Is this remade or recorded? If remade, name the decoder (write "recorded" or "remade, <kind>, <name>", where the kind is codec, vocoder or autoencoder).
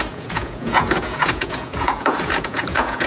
remade, vocoder, Vocos